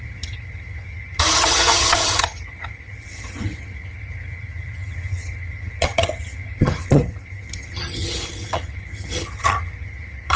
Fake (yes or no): yes